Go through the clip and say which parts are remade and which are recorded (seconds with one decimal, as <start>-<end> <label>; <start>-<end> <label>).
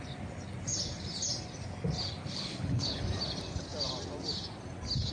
0.0-2.2 recorded; 2.2-3.0 remade; 3.0-5.1 recorded